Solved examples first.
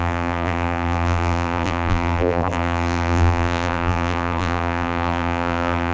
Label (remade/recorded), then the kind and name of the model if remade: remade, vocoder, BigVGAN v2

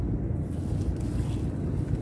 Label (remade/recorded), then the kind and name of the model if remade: recorded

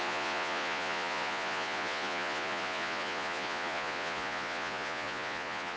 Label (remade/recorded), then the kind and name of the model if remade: remade, vocoder, Vocos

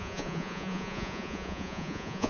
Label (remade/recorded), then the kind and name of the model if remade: remade, vocoder, Vocos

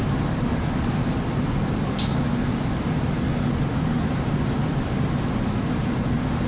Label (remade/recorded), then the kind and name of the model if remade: recorded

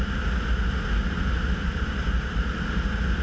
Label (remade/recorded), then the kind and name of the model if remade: recorded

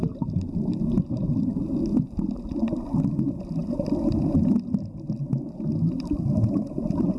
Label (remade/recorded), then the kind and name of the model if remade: recorded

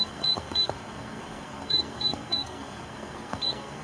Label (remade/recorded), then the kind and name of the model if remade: remade, codec, SNAC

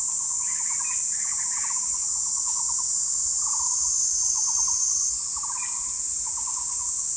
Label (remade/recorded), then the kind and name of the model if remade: remade, vocoder, BigVGAN v2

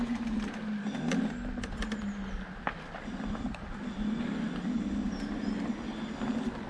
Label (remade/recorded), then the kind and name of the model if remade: recorded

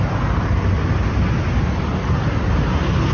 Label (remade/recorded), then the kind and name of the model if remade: recorded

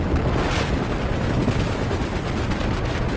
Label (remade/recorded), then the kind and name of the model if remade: remade, vocoder, BigVGAN v2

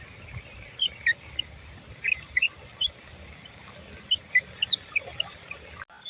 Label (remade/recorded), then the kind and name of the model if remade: recorded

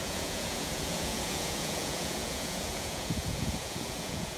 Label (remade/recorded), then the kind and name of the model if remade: remade, vocoder, Vocos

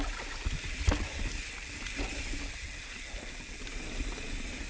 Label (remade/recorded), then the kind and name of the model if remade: recorded